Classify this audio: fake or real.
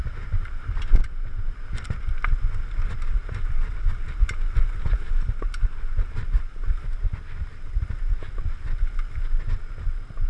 real